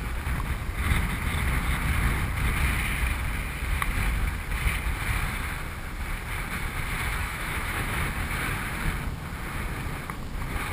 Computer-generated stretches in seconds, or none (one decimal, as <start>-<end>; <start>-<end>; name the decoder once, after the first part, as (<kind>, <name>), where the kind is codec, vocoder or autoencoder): 7.2-8.0 (autoencoder, DAC-VAE)